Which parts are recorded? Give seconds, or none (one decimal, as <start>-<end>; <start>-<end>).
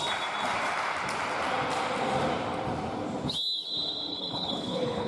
0.0-4.1